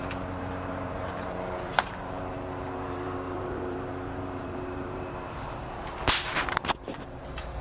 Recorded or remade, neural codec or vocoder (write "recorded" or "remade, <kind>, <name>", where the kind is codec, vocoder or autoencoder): remade, vocoder, BigVGAN v2